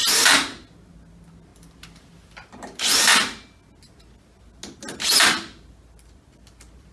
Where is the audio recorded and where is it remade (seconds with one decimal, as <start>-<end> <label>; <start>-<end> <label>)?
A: 0.0-6.9 recorded